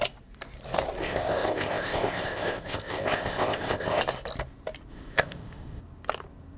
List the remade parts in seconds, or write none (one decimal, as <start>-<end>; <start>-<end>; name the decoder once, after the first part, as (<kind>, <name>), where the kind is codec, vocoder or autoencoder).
1.0-4.0 (codec, ZipCodec); 4.9-5.8